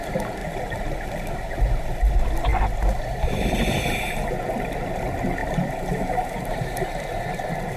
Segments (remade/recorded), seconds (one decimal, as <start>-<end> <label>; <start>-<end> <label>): 0.0-0.4 recorded; 0.4-1.6 remade; 1.6-7.8 recorded